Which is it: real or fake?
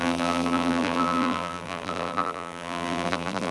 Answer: fake